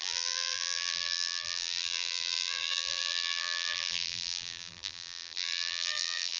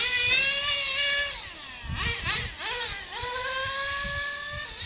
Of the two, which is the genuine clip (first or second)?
second